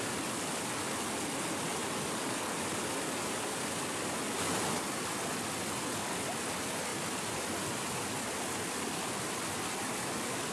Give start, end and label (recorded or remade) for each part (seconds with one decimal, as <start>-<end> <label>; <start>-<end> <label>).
0.0-10.5 recorded